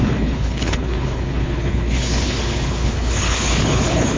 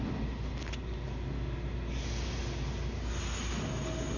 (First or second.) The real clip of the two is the second